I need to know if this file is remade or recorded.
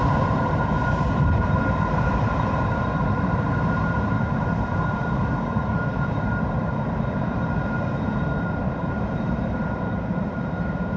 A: remade